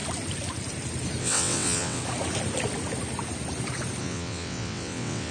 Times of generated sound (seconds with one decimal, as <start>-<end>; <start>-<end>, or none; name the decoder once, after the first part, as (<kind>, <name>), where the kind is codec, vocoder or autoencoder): 1.2-2.0 (vocoder, WaveNeXt); 4.0-5.3